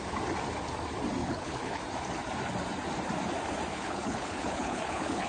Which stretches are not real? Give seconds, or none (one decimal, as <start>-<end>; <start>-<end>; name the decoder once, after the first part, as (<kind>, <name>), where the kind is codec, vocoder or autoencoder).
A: 1.2-1.8 (codec, HILCodec); 3.7-5.3